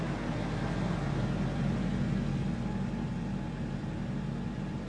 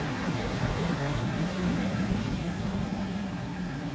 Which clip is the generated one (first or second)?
second